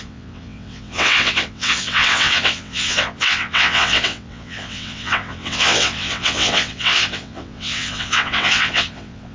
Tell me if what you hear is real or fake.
fake